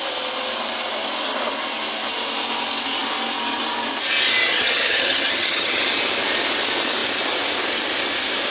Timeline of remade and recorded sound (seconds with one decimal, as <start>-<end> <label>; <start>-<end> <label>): 0.0-4.4 recorded; 4.4-5.8 remade; 5.8-8.5 recorded